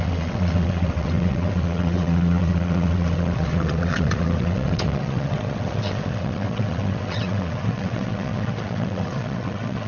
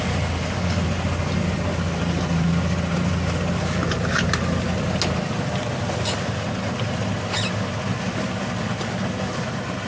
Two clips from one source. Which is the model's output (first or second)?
first